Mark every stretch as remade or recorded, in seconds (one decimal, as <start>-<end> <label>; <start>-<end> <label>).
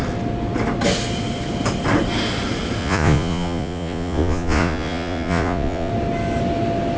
0.0-2.8 recorded; 2.8-5.9 remade; 5.9-7.0 recorded